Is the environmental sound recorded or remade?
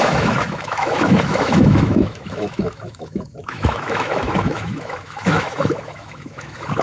remade